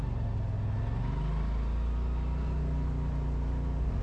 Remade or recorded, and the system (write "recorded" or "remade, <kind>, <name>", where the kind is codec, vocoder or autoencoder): recorded